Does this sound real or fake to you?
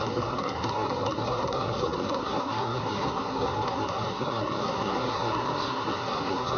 fake